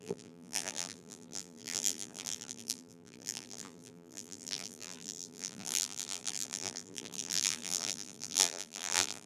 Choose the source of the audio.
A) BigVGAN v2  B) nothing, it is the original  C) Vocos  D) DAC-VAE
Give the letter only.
A